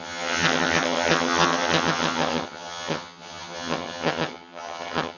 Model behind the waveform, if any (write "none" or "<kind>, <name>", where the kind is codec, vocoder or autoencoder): vocoder, HiFi-GAN